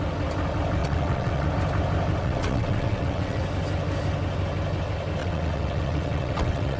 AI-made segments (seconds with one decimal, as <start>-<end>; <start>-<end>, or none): 0.8-1.5; 2.2-3.4; 5.2-6.8